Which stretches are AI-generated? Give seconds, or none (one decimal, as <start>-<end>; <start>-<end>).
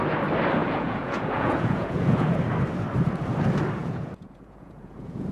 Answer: 0.6-2.4; 3.8-5.3